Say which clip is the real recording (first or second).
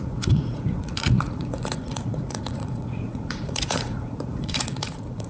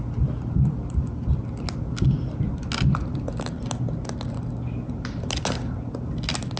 second